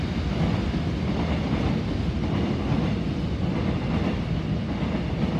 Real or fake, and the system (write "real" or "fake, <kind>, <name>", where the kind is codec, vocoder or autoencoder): real